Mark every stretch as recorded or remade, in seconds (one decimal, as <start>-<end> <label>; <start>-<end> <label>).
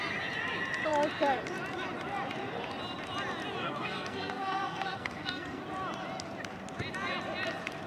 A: 0.0-3.6 recorded; 3.6-5.6 remade; 5.6-7.9 recorded